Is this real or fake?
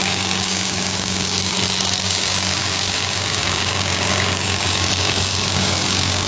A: fake